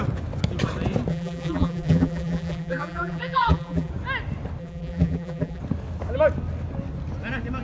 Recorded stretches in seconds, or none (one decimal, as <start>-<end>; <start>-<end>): 0.0-1.1; 3.9-4.6; 5.6-7.6